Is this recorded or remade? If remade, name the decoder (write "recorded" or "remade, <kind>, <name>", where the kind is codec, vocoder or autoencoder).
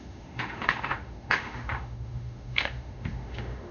remade, autoencoder, DAC-VAE